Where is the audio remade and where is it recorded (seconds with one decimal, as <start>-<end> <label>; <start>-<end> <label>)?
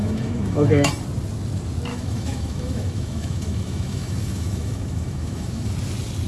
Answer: 0.0-0.9 remade; 0.9-1.9 recorded; 1.9-5.7 remade; 5.7-6.3 recorded